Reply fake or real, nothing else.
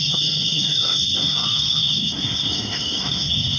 fake